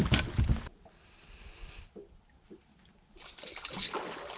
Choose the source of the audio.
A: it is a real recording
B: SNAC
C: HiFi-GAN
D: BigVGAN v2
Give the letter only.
A